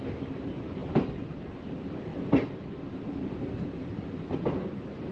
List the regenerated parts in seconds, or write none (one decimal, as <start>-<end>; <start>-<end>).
0.0-5.1